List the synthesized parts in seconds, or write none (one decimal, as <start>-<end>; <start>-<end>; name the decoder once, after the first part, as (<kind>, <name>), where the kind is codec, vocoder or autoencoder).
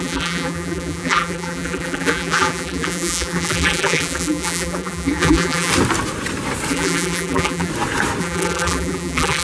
0.0-5.7 (vocoder, BigVGAN v2); 6.7-7.7; 8.2-9.4